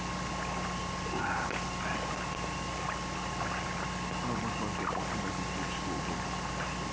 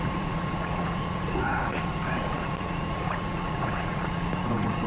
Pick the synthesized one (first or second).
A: second